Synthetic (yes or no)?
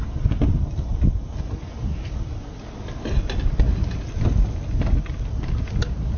no